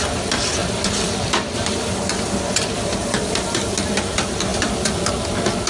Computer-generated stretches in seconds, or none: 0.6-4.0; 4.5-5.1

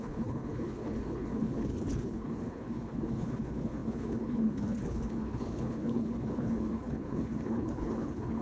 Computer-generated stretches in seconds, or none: 0.0-8.4